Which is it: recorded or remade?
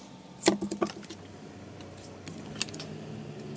recorded